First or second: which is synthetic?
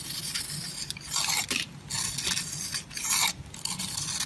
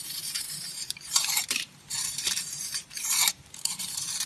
second